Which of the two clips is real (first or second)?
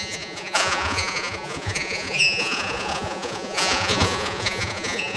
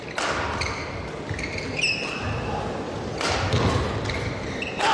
second